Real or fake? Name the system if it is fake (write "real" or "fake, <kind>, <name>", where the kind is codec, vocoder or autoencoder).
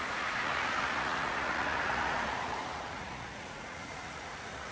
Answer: fake, vocoder, Vocos